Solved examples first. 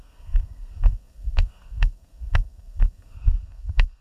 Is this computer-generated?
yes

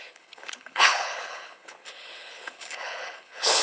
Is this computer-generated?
yes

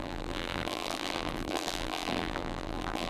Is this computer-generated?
yes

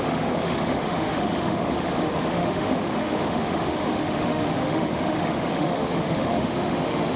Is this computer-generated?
yes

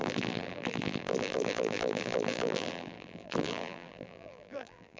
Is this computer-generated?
yes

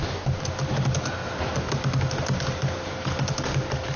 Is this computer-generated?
no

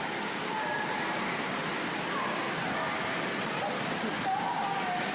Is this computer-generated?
no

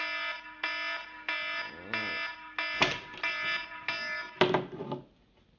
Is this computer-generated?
no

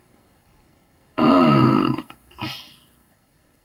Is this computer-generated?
yes